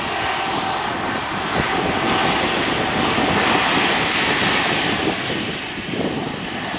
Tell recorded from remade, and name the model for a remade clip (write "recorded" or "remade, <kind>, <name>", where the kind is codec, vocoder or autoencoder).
recorded